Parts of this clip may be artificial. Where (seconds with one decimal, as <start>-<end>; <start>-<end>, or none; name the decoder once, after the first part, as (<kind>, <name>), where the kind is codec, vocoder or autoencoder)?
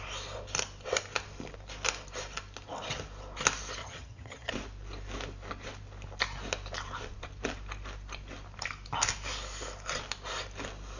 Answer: 3.8-4.5 (vocoder, HiFi-GAN)